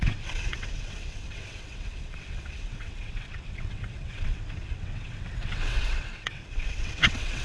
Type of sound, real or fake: fake